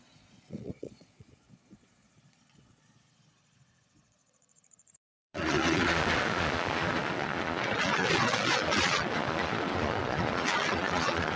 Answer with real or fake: fake